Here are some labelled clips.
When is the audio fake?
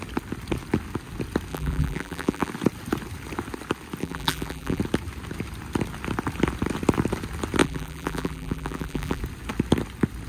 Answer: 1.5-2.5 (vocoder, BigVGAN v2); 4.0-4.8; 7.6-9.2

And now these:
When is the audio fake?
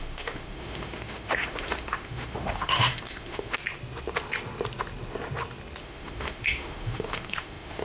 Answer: 0.0-3.6 (autoencoder, DAC-VAE); 5.8-7.8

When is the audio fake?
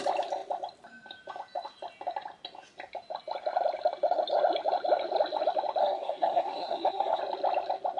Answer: 5.8-7.2 (codec, SNAC)